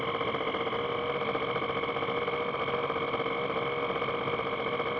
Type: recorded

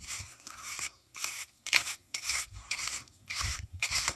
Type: remade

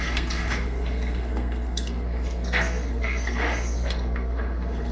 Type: remade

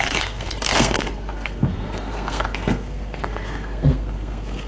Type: remade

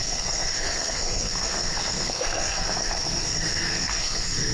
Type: remade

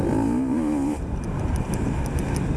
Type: recorded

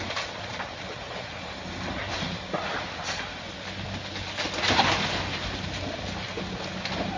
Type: recorded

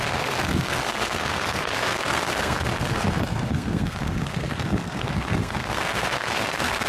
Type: remade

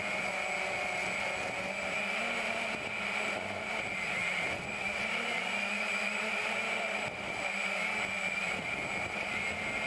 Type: recorded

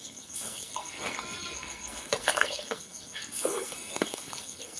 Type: remade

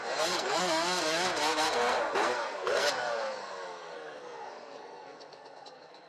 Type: remade